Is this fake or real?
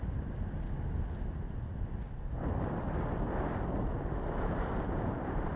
real